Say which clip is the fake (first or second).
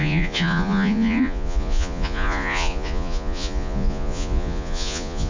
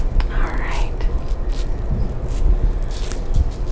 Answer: first